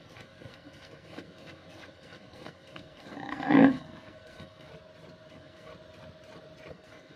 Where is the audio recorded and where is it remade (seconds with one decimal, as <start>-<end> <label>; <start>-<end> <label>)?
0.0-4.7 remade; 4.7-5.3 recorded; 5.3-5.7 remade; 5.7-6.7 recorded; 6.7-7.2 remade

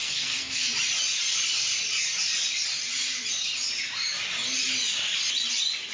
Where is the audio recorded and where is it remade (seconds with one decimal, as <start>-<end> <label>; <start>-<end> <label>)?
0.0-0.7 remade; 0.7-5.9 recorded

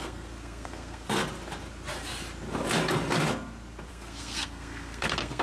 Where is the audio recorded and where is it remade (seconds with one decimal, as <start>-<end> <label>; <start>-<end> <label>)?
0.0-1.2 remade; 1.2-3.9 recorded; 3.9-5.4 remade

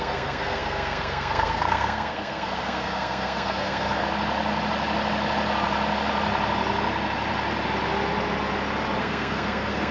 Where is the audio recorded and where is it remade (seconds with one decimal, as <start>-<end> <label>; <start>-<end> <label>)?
0.0-4.0 remade; 4.0-9.0 recorded; 9.0-9.9 remade